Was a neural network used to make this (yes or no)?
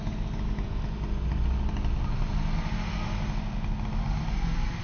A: no